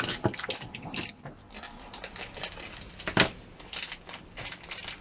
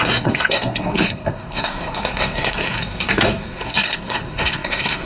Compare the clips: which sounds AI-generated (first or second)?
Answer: second